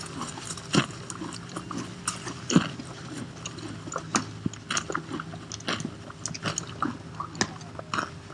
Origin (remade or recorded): recorded